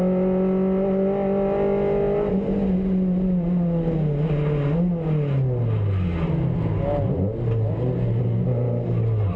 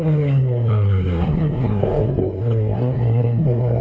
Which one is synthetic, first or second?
second